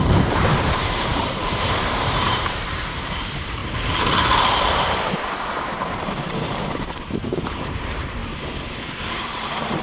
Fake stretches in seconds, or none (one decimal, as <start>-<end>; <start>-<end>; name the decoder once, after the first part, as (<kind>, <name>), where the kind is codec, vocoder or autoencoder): 0.0-3.6 (vocoder, BigVGAN v2); 5.2-8.2; 9.0-9.8